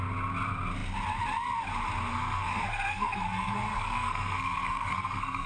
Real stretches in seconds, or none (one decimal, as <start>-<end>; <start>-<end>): 0.0-2.1